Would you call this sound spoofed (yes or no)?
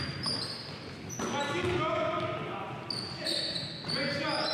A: no